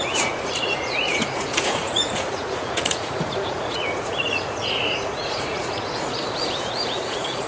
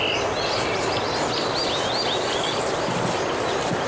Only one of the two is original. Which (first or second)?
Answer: second